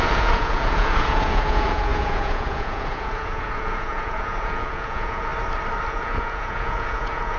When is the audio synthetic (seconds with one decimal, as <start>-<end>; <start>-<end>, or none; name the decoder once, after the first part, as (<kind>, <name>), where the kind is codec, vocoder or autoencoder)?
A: 0.0-5.3 (vocoder, Vocos); 5.9-7.4